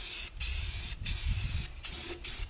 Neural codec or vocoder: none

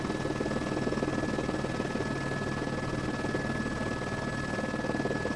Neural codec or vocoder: none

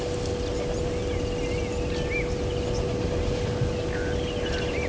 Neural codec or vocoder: none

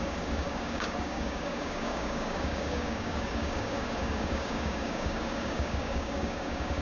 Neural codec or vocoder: codec, DAC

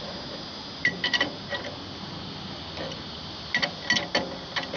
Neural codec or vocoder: none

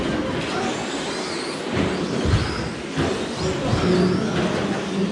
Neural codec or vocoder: none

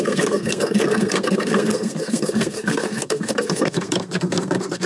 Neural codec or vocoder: codec, SNAC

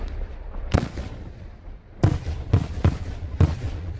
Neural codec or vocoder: vocoder, Vocos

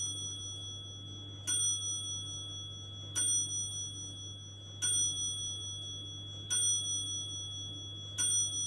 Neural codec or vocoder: none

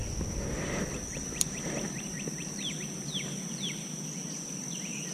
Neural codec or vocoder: none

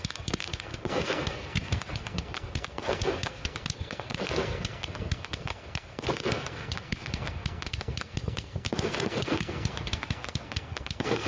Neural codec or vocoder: codec, SNAC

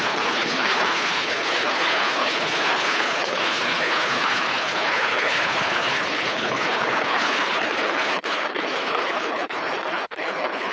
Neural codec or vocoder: codec, HILCodec